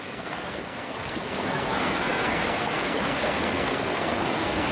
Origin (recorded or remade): remade